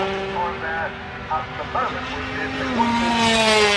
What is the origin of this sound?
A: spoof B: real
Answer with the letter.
B